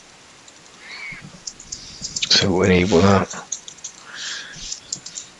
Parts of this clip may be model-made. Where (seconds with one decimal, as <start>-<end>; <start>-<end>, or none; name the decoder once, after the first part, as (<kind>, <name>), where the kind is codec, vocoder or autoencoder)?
1.6-4.8 (vocoder, Vocos)